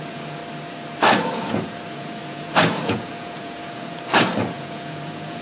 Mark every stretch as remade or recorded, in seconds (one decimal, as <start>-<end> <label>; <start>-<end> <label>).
0.0-0.4 remade; 0.4-1.2 recorded; 1.2-5.4 remade